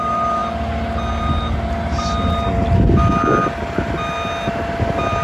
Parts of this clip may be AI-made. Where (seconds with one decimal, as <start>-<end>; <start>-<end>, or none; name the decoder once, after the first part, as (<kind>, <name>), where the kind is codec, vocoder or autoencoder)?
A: none